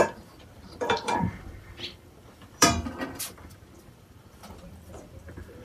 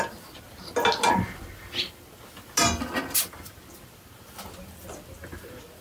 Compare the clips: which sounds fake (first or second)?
first